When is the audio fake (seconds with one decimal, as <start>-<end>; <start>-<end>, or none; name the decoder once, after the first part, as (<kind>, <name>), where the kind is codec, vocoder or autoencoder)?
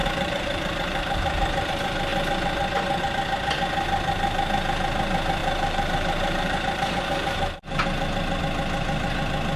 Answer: 0.0-1.7 (vocoder, BigVGAN v2); 5.4-8.4